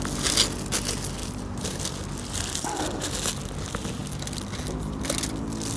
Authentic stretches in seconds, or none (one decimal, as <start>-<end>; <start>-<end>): 0.0-1.2; 1.8-5.8